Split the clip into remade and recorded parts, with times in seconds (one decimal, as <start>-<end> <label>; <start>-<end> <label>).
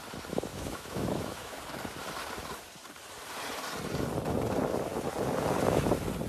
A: 0.0-0.5 recorded; 0.5-1.6 remade; 1.6-6.3 recorded